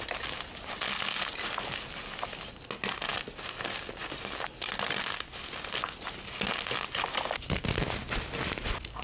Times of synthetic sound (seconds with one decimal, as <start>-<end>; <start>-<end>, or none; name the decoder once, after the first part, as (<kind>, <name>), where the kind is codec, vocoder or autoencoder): none